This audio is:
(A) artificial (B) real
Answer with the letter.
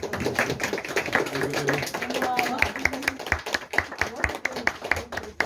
A